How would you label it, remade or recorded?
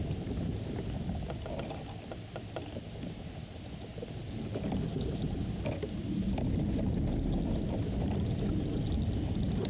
recorded